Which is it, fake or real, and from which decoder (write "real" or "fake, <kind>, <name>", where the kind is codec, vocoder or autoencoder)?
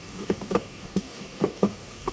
fake, codec, DAC